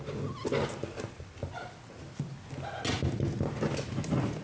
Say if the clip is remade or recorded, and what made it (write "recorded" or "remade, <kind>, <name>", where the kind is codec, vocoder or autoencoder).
recorded